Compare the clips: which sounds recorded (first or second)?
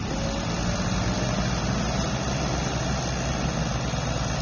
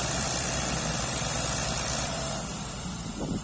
first